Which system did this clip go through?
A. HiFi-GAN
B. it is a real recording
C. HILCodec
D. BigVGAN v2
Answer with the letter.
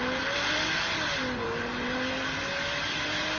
B